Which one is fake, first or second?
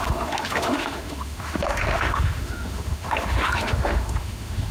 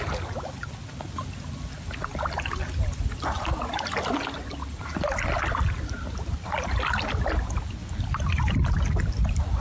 first